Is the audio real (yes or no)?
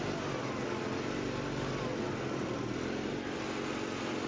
yes